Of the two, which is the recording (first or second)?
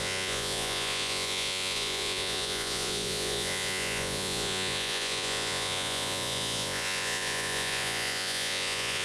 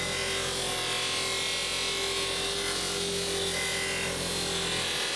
second